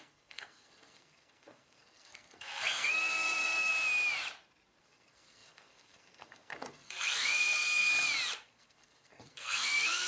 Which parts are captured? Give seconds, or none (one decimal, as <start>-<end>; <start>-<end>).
3.7-4.8; 7.9-8.4

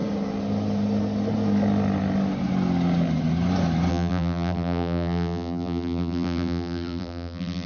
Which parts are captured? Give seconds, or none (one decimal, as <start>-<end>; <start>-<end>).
0.0-3.9

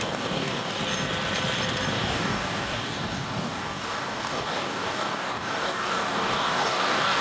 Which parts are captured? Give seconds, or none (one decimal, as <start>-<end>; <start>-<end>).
0.8-1.9

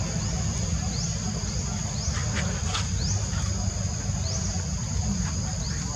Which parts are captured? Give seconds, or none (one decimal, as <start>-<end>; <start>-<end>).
0.0-6.0

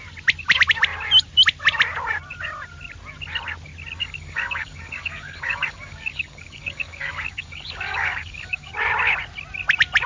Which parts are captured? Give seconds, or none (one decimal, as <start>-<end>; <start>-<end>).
0.0-4.0; 8.7-10.1